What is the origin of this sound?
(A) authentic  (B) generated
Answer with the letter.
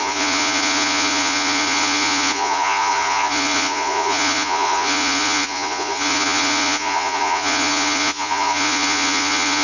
B